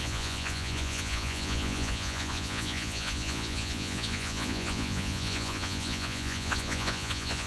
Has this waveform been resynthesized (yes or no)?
yes